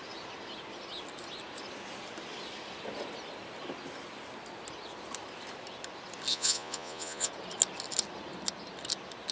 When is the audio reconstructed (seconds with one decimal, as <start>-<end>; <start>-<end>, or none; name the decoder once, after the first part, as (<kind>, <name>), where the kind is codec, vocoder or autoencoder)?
6.3-7.3 (vocoder, Vocos)